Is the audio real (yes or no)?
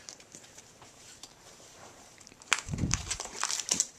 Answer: no